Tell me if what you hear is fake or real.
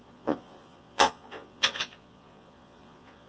fake